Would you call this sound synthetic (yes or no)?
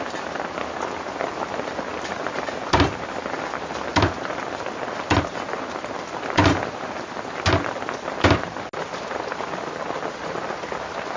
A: no